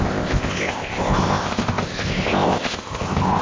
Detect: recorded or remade remade